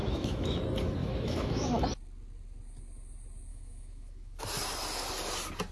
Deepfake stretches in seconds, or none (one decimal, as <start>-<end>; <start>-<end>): 0.0-0.6; 1.0-1.8; 3.5-4.4